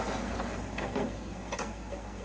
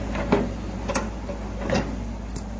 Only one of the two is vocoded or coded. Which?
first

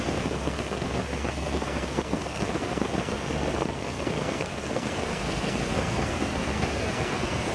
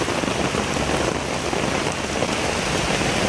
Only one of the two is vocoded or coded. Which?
first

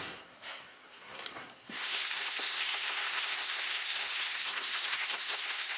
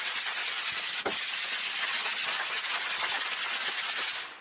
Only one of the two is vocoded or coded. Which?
first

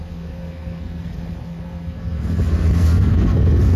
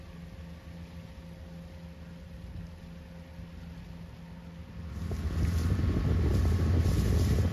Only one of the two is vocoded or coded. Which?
first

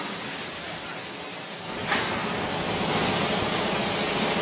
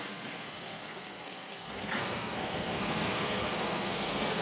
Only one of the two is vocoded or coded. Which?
second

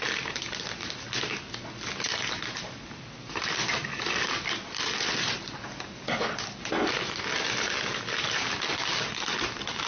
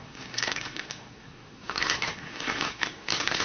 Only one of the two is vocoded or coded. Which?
second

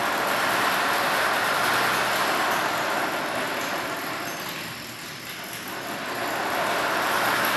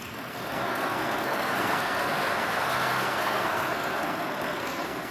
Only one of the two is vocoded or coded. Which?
second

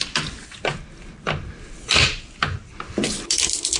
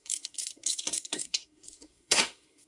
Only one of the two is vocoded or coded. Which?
second